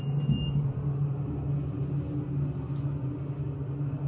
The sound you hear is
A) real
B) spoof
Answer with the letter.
A